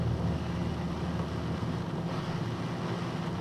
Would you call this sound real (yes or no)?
yes